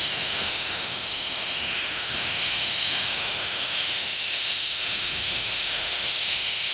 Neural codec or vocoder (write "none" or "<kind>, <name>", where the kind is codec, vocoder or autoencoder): autoencoder, DAC-VAE